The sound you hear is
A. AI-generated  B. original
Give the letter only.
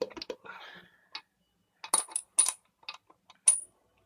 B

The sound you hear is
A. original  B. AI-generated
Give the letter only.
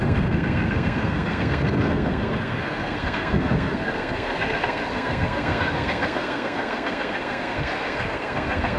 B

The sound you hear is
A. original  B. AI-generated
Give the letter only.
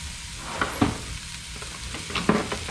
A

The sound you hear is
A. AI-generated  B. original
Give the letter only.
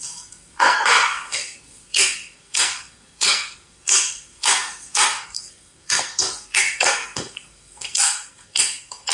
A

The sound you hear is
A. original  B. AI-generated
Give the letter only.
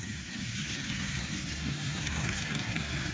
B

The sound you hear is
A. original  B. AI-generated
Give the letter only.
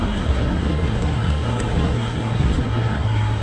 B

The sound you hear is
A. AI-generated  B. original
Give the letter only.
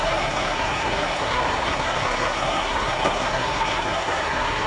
A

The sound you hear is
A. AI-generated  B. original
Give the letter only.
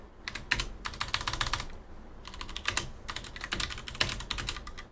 B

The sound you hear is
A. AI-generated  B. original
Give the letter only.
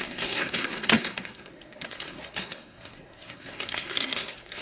A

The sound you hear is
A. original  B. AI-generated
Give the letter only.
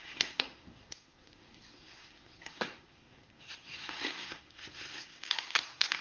B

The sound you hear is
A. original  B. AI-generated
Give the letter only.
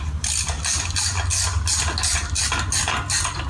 A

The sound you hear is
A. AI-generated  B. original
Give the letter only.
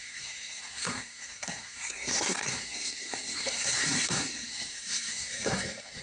A